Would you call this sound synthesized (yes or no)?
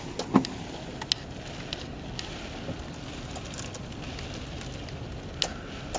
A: no